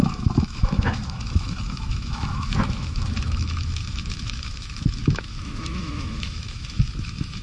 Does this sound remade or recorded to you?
remade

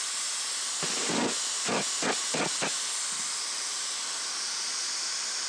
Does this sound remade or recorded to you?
recorded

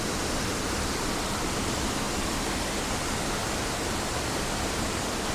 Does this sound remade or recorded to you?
recorded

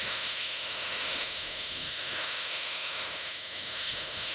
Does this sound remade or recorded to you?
remade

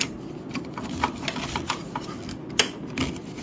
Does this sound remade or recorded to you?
recorded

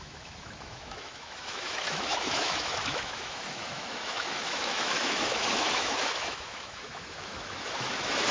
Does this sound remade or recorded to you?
remade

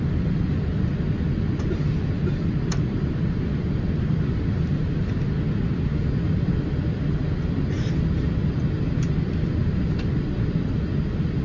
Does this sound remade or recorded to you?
recorded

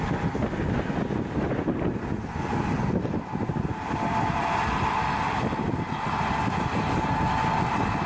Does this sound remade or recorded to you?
recorded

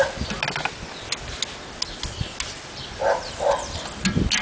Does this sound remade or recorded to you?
recorded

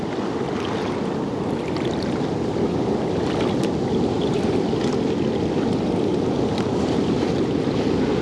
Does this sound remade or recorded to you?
recorded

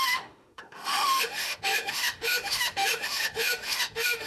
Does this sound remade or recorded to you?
remade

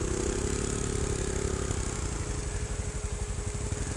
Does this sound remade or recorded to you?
recorded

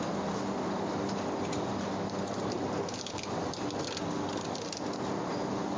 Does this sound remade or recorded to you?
recorded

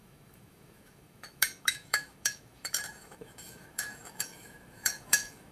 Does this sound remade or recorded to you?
remade